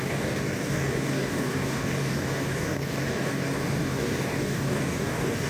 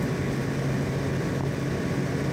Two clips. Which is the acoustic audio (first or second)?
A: second